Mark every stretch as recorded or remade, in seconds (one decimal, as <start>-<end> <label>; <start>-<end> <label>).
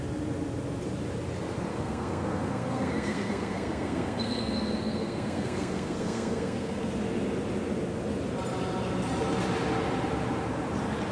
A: 0.0-1.7 recorded; 1.7-6.9 remade; 6.9-11.1 recorded